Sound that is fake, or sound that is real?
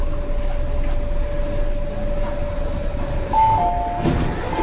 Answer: real